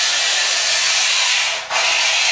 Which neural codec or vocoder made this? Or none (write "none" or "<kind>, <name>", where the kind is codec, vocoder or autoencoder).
vocoder, Vocos